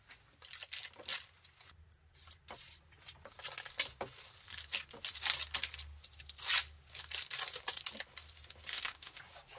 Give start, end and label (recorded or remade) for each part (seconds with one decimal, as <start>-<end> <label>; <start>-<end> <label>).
0.0-8.7 recorded; 8.7-9.2 remade; 9.2-9.6 recorded